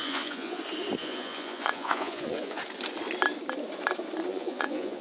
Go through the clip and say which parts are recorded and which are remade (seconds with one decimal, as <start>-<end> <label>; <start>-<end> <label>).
0.0-0.6 remade; 0.6-1.0 recorded; 1.0-2.6 remade; 2.6-4.3 recorded; 4.3-5.0 remade

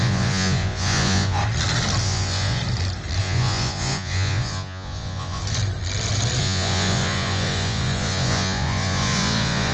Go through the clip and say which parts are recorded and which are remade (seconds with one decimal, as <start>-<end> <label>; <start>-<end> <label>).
0.0-1.4 remade; 1.4-2.0 recorded; 2.0-2.6 remade; 2.6-3.2 recorded; 3.2-5.4 remade; 5.4-6.4 recorded; 6.4-9.7 remade

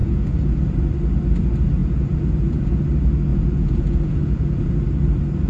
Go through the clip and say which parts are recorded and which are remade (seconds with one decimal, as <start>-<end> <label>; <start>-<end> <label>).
0.0-0.6 remade; 0.6-1.8 recorded; 1.8-2.8 remade; 2.8-3.3 recorded; 3.3-4.7 remade; 4.7-5.5 recorded